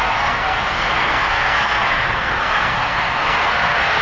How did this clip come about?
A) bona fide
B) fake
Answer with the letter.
B